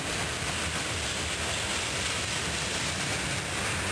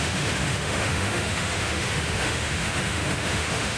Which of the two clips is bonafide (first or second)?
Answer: first